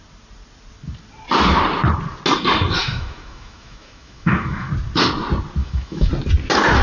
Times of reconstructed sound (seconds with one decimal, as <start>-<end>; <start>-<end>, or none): 2.8-4.7; 5.6-6.1